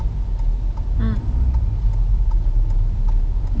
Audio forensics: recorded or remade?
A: recorded